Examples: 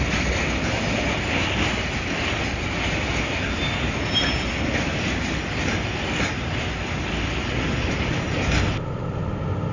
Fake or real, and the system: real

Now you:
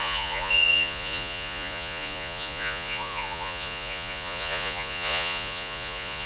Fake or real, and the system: fake, vocoder, Vocos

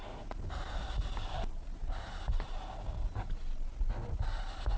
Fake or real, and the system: real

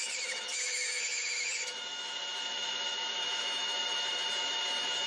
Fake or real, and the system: fake, autoencoder, DAC-VAE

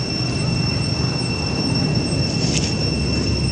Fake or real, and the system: real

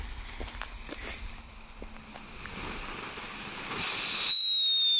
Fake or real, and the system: real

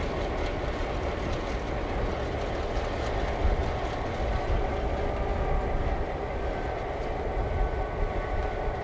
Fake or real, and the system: real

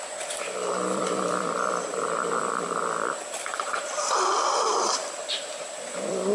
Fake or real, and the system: fake, vocoder, BigVGAN v2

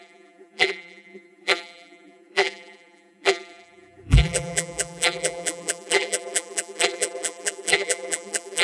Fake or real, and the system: fake, vocoder, BigVGAN v2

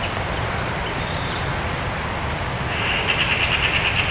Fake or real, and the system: real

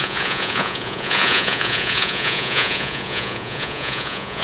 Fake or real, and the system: fake, vocoder, Vocos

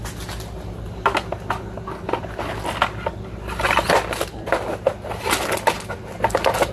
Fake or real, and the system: real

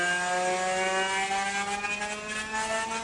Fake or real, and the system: real